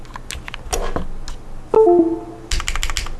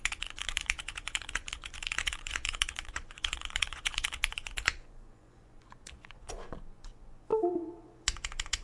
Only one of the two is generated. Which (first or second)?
second